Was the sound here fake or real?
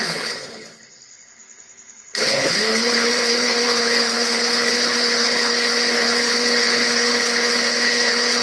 fake